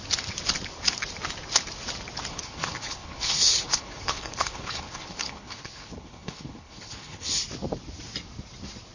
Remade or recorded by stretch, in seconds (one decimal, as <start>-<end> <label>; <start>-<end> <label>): 0.0-2.3 recorded; 2.3-7.4 remade; 7.4-8.9 recorded